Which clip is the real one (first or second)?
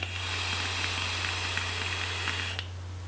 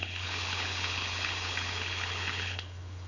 first